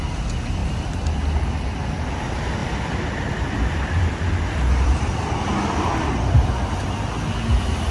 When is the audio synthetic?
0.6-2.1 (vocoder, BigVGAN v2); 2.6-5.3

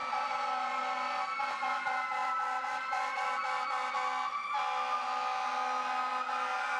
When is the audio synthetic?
0.0-0.8 (vocoder, BigVGAN v2); 2.2-3.9

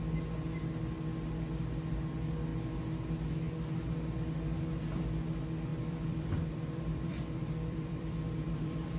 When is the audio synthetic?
5.7-9.0 (vocoder, BigVGAN v2)

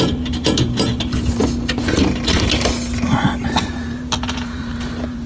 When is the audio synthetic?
0.0-1.4 (vocoder, BigVGAN v2); 3.6-5.3

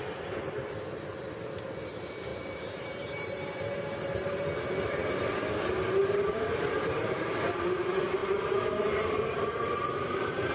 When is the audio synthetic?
2.3-3.4 (vocoder, BigVGAN v2); 6.0-6.6; 8.2-10.5

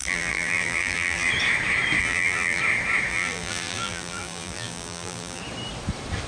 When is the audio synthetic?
0.0-1.3 (vocoder, BigVGAN v2); 2.0-2.6; 3.1-5.4